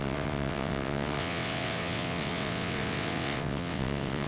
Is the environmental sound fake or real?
fake